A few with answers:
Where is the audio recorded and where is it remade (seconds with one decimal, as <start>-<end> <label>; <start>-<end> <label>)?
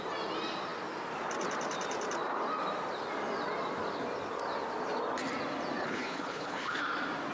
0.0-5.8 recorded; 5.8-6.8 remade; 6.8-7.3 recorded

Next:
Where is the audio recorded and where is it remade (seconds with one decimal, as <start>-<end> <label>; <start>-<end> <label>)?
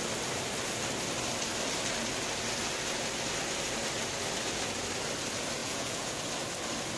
0.0-5.6 recorded; 5.6-6.2 remade; 6.2-7.0 recorded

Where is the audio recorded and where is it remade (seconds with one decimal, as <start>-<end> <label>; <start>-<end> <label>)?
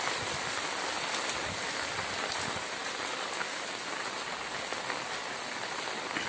0.0-6.3 recorded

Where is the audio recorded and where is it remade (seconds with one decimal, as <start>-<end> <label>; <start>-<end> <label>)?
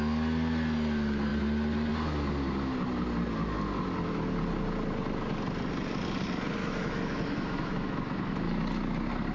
0.0-6.6 recorded; 6.6-8.6 remade; 8.6-9.3 recorded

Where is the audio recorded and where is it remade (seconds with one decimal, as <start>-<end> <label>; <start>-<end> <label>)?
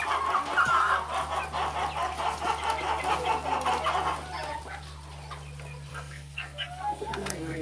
0.0-5.9 recorded; 5.9-7.6 remade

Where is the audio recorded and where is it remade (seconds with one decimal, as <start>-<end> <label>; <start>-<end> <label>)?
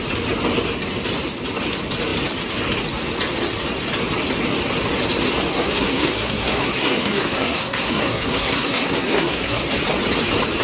0.0-5.5 recorded; 5.5-9.6 remade; 9.6-10.6 recorded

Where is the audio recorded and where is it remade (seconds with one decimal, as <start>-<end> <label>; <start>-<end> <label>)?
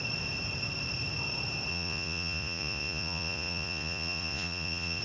0.0-1.7 recorded; 1.7-5.0 remade